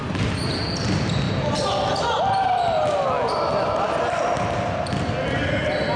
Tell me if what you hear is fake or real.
real